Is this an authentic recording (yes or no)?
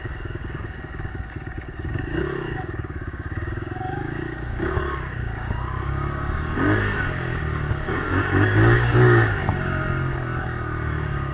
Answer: no